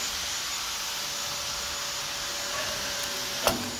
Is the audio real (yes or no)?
yes